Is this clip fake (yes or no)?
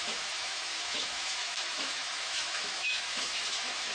yes